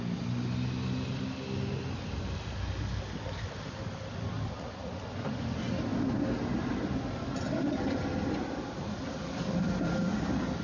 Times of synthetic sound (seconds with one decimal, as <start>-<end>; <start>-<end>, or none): none